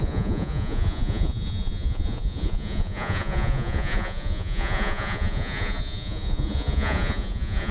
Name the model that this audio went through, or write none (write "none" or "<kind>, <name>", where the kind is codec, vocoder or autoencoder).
vocoder, Vocos